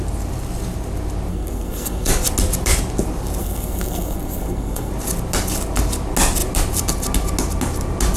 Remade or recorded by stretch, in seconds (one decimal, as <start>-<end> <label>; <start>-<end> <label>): 0.0-1.3 recorded; 1.3-2.1 remade; 2.1-3.4 recorded; 3.4-4.9 remade; 4.9-8.2 recorded

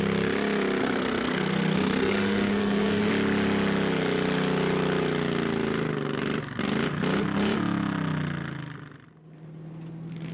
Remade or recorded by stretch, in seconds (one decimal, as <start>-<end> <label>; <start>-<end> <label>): 0.0-0.8 recorded; 0.8-3.1 remade; 3.1-10.3 recorded